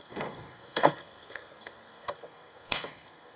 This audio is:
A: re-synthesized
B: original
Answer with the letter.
A